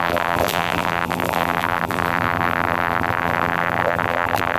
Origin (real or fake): fake